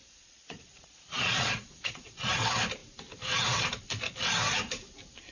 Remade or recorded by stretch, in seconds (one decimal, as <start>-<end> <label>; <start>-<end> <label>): 0.0-2.3 remade; 2.3-5.3 recorded

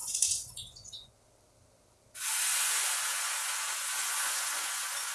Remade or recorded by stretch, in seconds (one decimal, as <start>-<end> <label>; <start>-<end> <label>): 0.0-1.2 remade; 1.2-2.5 recorded; 2.5-5.1 remade

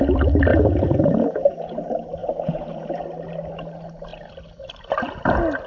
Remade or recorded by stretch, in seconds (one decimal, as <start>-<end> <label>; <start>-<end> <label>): 0.0-0.5 recorded; 0.5-1.7 remade; 1.7-2.2 recorded; 2.2-3.0 remade; 3.0-5.7 recorded

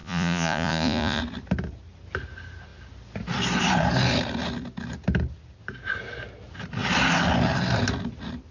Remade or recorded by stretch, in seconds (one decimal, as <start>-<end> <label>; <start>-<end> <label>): 0.0-1.2 remade; 1.2-8.5 recorded

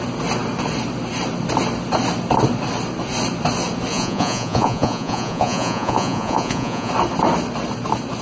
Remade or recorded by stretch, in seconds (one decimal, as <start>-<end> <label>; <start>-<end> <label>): 0.0-3.9 recorded; 3.9-6.9 remade; 6.9-8.2 recorded

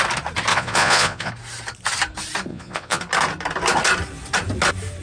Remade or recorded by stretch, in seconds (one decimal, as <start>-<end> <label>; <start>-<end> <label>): 0.0-0.5 recorded; 0.5-1.3 remade; 1.3-2.5 recorded; 2.5-3.0 remade; 3.0-5.0 recorded